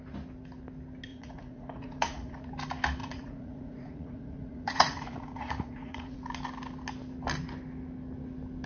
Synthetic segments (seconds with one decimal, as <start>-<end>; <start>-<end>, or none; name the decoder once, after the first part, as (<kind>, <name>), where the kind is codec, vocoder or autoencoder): 1.1-2.5 (vocoder, Vocos); 3.0-6.2